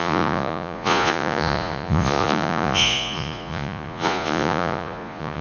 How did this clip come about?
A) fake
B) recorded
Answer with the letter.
A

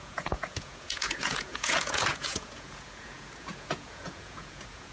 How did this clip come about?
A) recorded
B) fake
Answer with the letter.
B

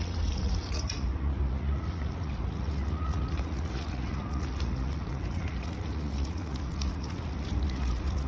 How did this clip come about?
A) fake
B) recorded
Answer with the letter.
A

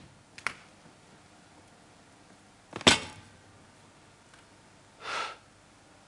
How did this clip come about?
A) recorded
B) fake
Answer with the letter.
A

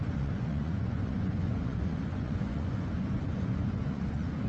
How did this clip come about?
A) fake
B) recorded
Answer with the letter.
A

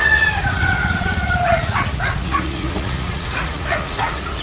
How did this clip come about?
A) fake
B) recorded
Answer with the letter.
A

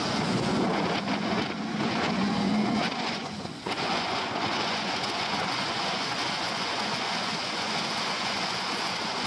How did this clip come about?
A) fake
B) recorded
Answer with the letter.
A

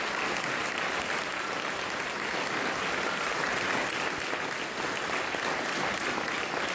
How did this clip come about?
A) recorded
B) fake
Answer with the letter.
A